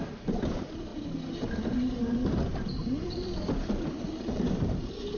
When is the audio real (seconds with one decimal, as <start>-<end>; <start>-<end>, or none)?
none